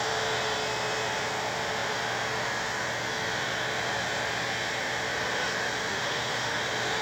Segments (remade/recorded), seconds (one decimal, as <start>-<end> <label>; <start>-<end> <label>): 0.0-5.9 recorded; 5.9-6.6 remade; 6.6-7.0 recorded